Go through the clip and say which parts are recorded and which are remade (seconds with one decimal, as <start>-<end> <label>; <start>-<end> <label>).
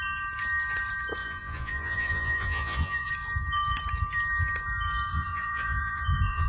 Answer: 0.0-1.2 recorded; 1.2-3.1 remade; 3.1-5.1 recorded; 5.1-6.5 remade